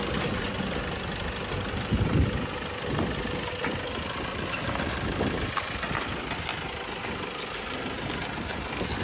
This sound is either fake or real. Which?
real